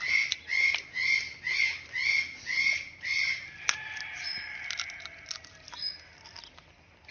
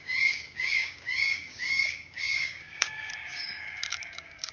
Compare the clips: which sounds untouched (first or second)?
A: first